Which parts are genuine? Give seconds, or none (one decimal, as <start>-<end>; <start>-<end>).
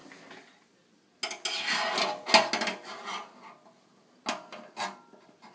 0.0-5.5